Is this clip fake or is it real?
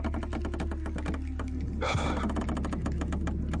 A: real